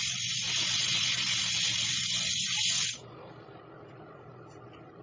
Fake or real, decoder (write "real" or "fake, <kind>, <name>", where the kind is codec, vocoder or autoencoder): real